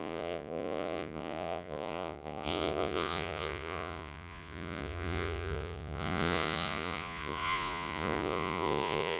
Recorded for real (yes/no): no